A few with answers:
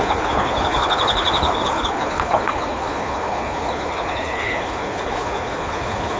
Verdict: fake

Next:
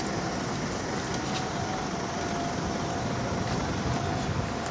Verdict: real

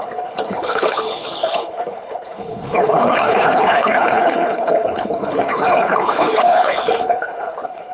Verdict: fake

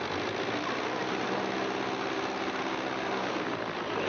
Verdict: real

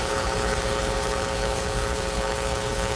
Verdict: fake